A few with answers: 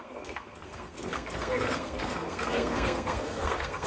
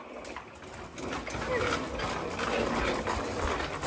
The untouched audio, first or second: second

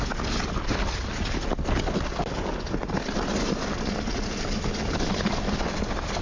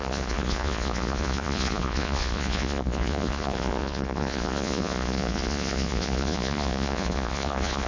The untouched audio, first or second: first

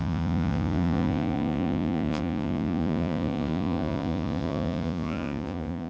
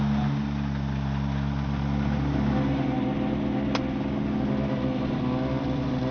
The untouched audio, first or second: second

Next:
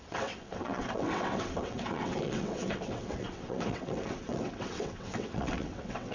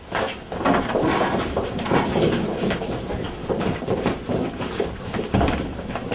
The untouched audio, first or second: second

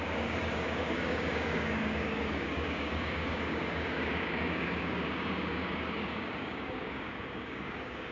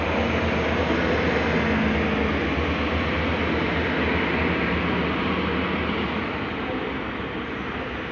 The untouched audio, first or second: second